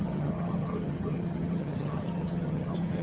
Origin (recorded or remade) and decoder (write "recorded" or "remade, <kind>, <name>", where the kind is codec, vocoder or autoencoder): remade, vocoder, HiFi-GAN